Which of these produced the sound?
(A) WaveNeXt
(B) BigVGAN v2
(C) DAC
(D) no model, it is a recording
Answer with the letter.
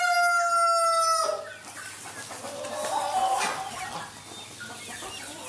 D